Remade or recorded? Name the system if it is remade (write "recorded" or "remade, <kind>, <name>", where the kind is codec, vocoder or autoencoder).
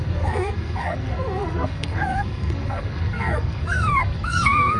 remade, codec, SNAC